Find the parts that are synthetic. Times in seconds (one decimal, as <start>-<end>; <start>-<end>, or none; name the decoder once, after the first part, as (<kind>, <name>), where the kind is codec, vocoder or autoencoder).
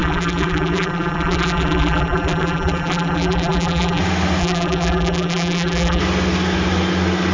0.0-4.0 (vocoder, BigVGAN v2); 4.4-6.0